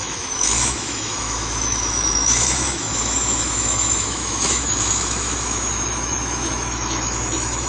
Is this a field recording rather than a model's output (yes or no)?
no